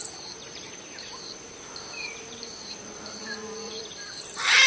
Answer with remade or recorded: remade